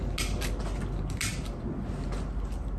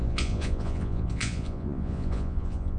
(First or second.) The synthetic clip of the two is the second